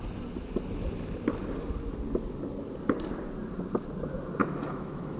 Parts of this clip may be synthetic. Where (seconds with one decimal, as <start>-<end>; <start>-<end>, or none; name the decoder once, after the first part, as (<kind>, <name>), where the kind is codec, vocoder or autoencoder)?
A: 4.4-5.2 (autoencoder, DAC-VAE)